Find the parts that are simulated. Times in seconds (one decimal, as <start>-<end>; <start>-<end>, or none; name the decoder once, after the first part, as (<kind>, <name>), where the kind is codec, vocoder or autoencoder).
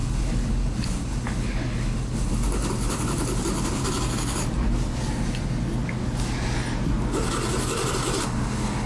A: 0.0-3.8 (codec, HILCodec); 8.2-8.9